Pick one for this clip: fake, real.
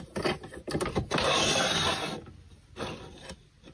real